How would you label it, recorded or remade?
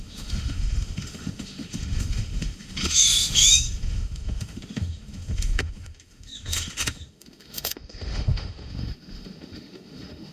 remade